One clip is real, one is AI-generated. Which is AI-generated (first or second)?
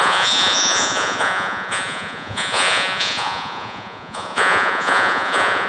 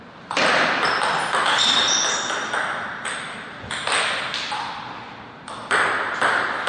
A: first